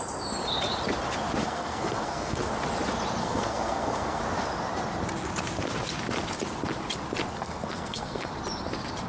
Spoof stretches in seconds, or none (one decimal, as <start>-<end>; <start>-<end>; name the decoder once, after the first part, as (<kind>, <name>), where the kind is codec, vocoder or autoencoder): 1.4-2.5 (codec, SNAC); 3.2-4.2; 7.3-8.3